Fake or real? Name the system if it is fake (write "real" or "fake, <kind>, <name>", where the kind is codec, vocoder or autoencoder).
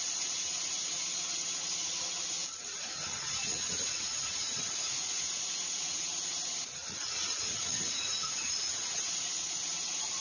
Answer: fake, vocoder, Vocos